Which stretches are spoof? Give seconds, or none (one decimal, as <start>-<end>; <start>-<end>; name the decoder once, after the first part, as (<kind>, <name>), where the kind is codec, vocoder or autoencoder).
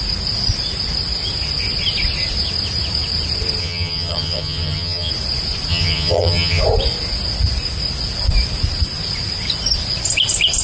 3.6-5.1 (vocoder, HiFi-GAN); 5.7-6.6